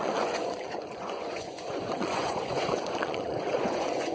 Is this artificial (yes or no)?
yes